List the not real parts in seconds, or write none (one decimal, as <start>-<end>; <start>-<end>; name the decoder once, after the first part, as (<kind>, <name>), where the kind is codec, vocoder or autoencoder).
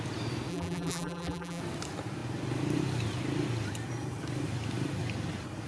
0.5-1.6 (vocoder, BigVGAN v2)